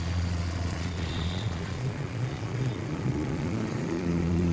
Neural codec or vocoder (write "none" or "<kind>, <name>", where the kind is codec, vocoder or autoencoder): vocoder, Vocos